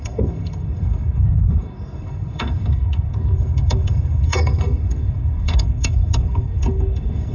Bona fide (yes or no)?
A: no